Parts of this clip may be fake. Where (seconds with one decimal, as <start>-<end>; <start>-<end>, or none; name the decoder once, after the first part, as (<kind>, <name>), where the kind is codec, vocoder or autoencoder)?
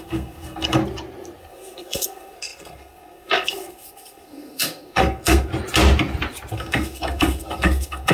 0.0-0.8 (codec, SNAC); 1.4-5.5; 6.5-8.1